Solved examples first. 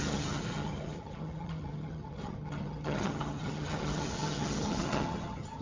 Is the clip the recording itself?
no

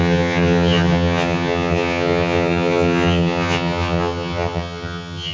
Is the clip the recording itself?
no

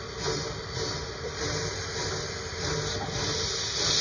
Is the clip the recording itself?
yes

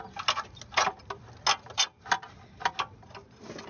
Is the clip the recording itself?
yes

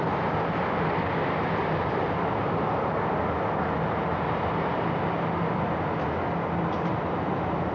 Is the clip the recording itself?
yes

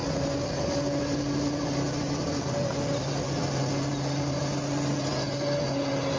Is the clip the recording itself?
yes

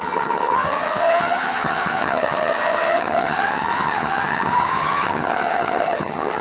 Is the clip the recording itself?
no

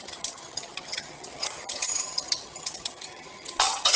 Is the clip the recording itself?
no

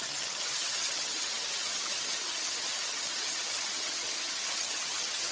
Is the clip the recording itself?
no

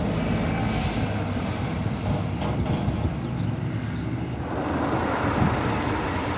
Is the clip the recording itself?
yes